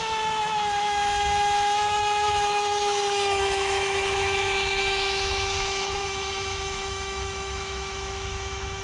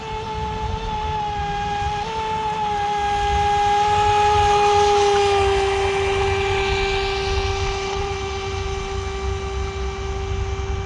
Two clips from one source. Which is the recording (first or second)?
second